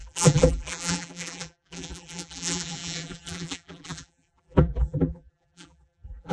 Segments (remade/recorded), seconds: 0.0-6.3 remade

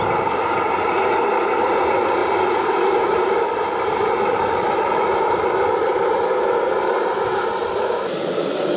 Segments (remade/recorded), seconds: 0.0-0.9 remade; 0.9-2.2 recorded; 2.2-5.7 remade; 5.7-8.8 recorded